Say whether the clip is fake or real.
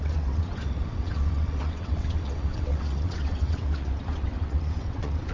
fake